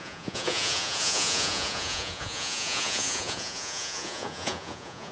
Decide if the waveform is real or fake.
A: fake